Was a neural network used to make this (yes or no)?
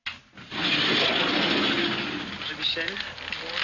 no